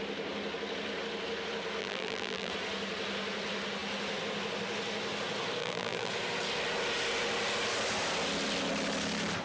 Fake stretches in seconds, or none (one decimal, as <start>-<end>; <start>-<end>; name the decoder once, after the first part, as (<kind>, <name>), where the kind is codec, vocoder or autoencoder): 1.8-2.5 (vocoder, BigVGAN v2); 5.6-6.1